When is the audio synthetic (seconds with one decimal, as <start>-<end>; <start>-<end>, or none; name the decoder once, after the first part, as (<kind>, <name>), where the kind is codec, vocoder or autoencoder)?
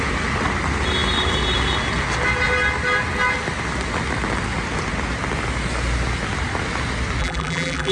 7.2-7.9 (vocoder, BigVGAN v2)